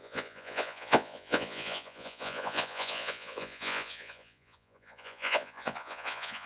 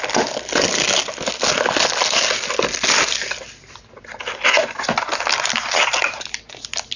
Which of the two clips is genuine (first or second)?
second